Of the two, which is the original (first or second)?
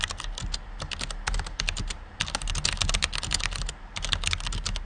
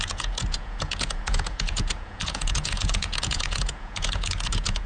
first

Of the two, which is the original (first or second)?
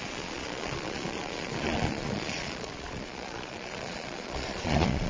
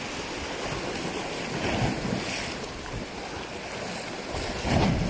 second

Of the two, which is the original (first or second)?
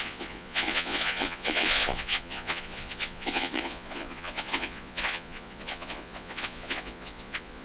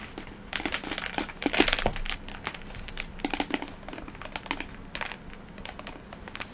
second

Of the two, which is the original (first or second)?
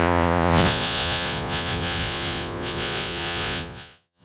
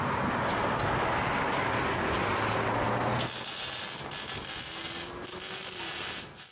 second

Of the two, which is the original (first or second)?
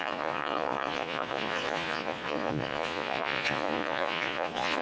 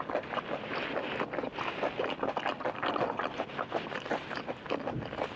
second